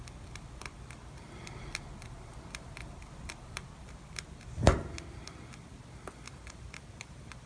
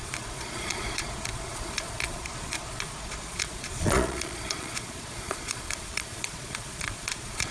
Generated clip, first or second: second